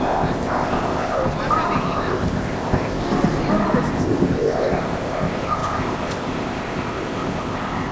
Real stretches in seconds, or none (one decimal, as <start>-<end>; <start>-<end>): 1.2-1.8; 3.0-3.9